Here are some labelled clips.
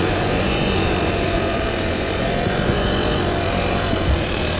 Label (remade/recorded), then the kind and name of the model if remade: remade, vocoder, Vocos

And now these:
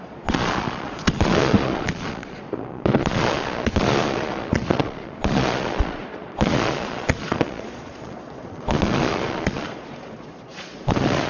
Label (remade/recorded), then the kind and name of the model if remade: remade, vocoder, Vocos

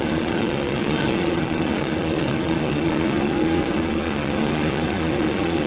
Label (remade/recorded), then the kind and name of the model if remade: remade, vocoder, Vocos